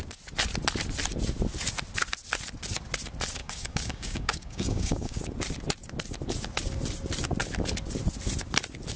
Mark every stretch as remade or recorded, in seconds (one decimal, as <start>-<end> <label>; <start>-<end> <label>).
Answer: 0.0-3.4 recorded; 3.4-5.2 remade; 5.2-9.0 recorded